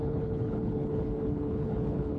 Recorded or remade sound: remade